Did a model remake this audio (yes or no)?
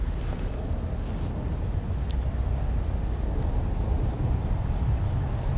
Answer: no